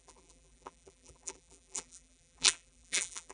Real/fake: fake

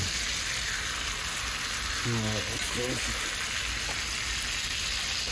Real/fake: real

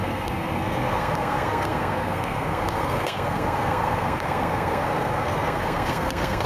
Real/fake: fake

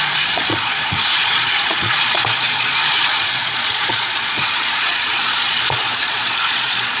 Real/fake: fake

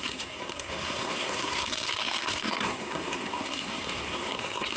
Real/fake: fake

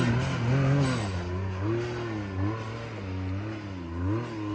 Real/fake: real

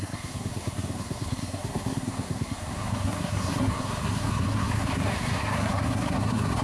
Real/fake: fake